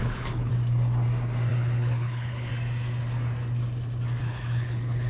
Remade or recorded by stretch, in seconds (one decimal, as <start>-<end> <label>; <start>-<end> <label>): 0.0-0.5 remade; 0.5-1.5 recorded; 1.5-2.5 remade; 2.5-4.2 recorded; 4.2-5.1 remade